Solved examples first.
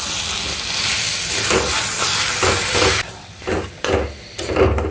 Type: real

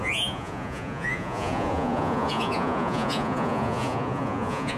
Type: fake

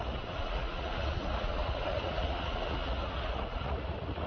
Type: fake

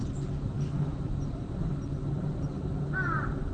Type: real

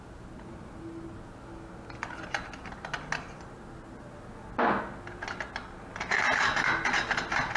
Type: real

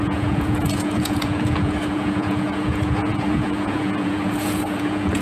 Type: fake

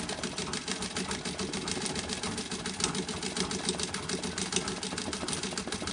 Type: real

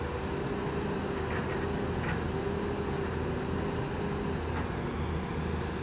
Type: real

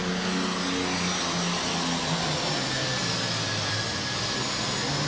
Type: real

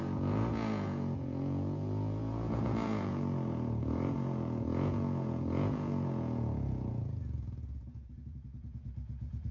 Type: fake